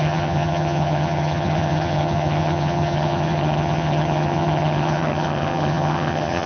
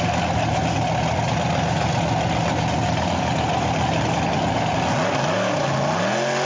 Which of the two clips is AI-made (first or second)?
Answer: first